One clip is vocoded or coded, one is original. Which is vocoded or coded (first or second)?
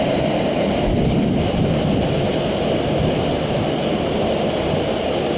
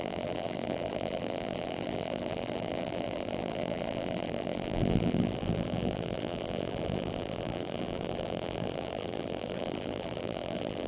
second